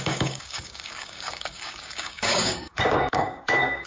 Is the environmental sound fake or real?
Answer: fake